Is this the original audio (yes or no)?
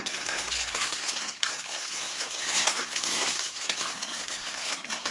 no